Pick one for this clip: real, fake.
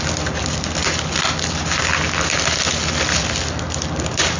real